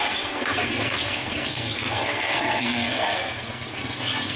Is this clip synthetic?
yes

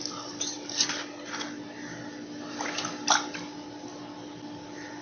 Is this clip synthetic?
no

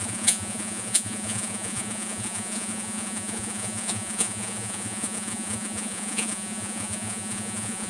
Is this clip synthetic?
yes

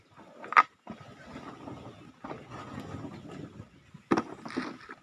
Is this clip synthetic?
no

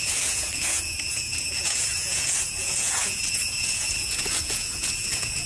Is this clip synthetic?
yes